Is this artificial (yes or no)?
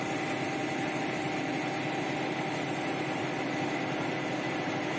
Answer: no